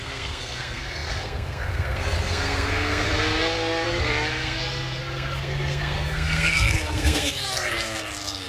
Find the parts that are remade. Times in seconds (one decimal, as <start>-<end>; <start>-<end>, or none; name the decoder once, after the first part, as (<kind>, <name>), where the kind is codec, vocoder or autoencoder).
0.0-8.5 (codec, SNAC)